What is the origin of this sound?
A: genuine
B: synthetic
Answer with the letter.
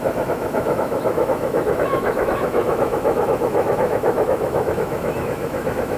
B